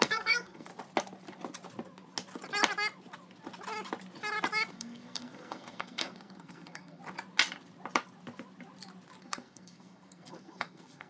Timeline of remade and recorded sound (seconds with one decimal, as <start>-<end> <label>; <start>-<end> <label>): 0.0-0.7 remade; 0.7-4.7 recorded; 4.7-7.0 remade; 7.0-9.2 recorded; 9.2-11.1 remade